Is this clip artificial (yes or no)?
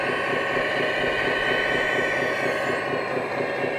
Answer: no